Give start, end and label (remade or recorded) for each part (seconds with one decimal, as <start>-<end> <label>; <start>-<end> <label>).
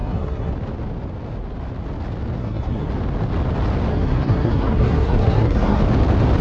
0.0-0.5 remade; 0.5-2.4 recorded; 2.4-2.9 remade; 2.9-3.9 recorded; 3.9-5.8 remade; 5.8-6.4 recorded